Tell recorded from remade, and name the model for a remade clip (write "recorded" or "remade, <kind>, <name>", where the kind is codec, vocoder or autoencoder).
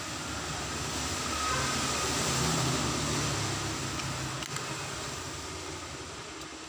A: recorded